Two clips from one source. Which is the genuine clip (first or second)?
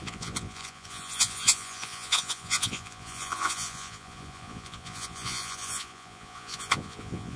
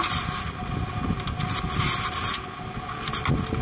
second